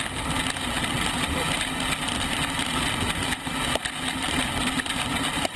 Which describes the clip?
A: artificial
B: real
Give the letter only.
B